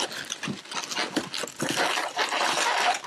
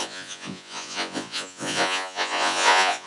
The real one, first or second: first